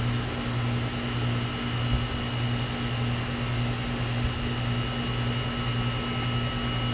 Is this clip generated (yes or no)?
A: no